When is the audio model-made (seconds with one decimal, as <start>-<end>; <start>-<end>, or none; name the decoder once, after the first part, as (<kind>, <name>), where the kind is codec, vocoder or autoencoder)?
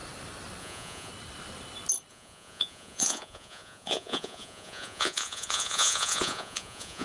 0.6-1.1 (vocoder, Vocos); 2.1-7.0